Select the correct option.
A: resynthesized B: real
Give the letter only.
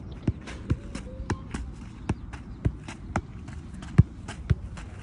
B